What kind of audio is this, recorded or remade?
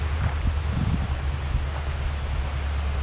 recorded